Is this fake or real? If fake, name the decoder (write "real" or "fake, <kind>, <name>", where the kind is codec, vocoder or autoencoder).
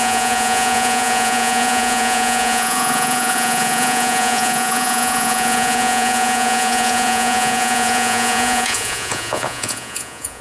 fake, vocoder, Vocos